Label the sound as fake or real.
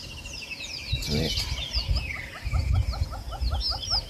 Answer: real